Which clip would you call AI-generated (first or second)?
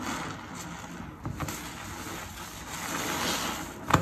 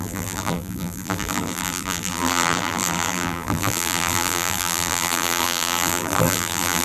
second